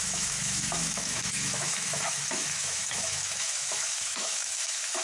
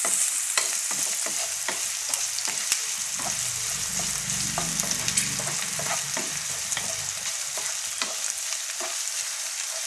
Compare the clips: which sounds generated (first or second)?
first